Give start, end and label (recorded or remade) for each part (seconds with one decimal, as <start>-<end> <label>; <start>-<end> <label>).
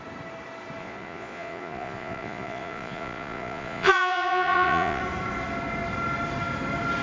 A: 0.0-0.8 recorded; 0.8-5.0 remade; 5.0-7.0 recorded